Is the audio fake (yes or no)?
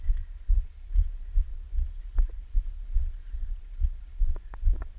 yes